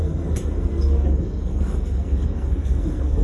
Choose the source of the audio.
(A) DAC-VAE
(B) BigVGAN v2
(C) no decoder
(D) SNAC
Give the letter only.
D